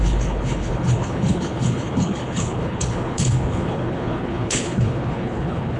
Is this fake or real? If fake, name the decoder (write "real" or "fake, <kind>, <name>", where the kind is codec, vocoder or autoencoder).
fake, codec, HILCodec